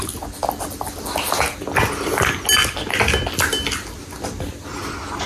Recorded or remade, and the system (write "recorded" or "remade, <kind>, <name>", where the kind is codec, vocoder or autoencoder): recorded